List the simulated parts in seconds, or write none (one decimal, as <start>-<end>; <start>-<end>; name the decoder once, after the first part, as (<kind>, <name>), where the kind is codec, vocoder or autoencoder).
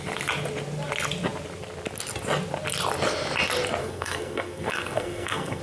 3.8-5.6 (codec, SNAC)